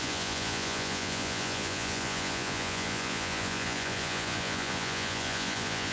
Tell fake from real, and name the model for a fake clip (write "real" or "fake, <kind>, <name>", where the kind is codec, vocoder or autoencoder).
fake, vocoder, Vocos